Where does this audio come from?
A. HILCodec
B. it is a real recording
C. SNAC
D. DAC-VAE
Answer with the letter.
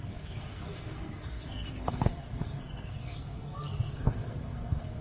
C